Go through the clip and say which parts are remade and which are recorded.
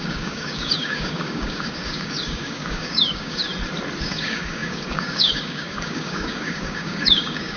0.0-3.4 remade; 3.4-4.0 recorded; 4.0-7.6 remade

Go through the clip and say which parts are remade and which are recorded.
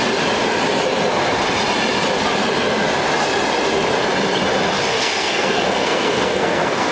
0.0-5.0 recorded; 5.0-6.9 remade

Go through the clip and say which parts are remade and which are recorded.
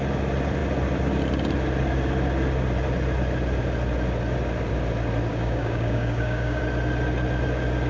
0.0-5.3 recorded; 5.3-6.6 remade; 6.6-7.9 recorded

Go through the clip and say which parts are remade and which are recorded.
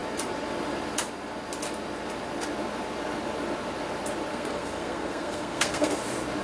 0.0-4.3 recorded; 4.3-6.0 remade; 6.0-6.4 recorded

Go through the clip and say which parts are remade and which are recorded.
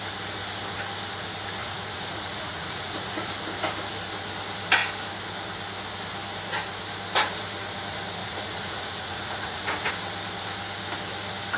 0.0-1.6 recorded; 1.6-3.3 remade; 3.3-8.2 recorded; 8.2-9.9 remade; 9.9-11.6 recorded